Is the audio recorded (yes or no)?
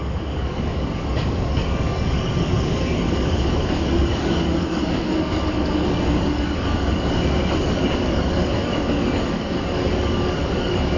no